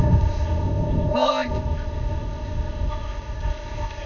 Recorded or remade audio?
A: remade